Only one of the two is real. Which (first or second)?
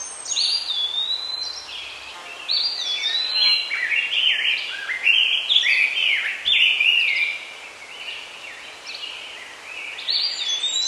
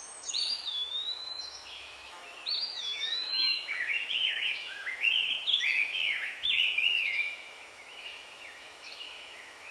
first